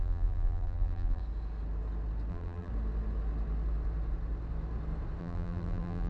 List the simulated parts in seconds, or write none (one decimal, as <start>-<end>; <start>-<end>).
0.0-1.2; 2.3-2.7; 5.2-6.1